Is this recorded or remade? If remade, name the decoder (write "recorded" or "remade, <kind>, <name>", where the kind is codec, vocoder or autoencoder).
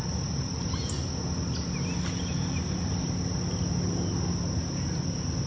recorded